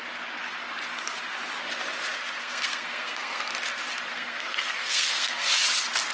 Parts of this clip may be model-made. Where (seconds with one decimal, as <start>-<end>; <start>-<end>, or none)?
2.4-3.5; 4.1-5.5

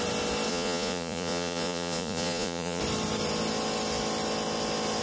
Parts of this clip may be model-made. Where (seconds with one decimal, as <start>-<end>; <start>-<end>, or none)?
0.5-2.8